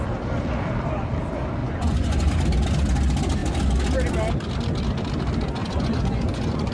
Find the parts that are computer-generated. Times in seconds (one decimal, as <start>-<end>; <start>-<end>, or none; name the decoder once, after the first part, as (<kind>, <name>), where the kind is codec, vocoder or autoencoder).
1.6-2.3 (vocoder, Vocos); 5.6-6.7